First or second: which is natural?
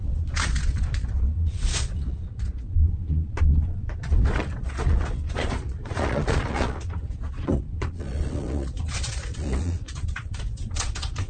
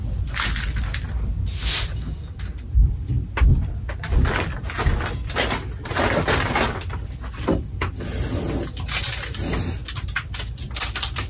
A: second